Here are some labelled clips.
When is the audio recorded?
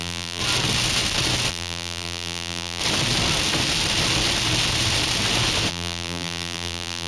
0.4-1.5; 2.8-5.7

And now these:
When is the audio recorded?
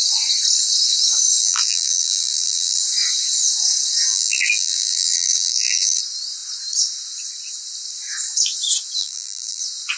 0.0-1.4; 2.8-4.1; 6.0-9.0; 9.6-10.0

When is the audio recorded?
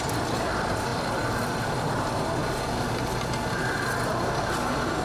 2.4-3.6; 4.1-5.0